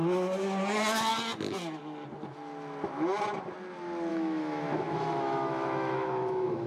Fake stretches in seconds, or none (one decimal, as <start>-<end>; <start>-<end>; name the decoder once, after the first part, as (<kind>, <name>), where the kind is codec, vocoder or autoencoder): 4.1-6.7 (autoencoder, DAC-VAE)